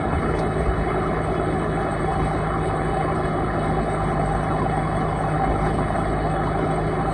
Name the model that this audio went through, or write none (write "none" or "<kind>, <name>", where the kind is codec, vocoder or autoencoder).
codec, HILCodec